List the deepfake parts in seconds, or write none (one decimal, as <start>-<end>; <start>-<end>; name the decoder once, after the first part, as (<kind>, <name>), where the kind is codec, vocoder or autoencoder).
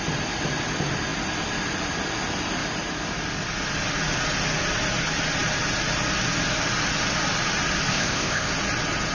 7.9-8.5 (codec, ZipCodec)